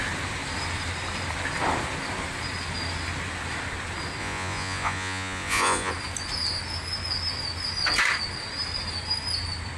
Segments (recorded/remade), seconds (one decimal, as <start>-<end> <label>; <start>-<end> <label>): 0.0-4.2 recorded; 4.2-5.9 remade; 5.9-9.8 recorded